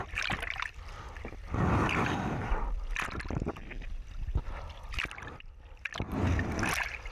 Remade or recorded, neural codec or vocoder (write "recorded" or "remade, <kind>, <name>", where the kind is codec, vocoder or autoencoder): recorded